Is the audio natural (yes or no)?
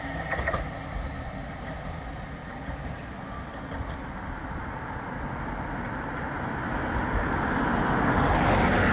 yes